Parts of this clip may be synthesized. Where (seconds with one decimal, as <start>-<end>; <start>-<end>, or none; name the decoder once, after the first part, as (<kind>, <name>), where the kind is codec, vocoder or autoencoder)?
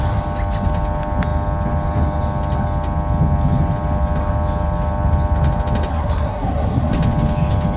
5.9-6.9 (codec, SNAC)